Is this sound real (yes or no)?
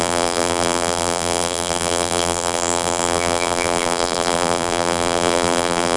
no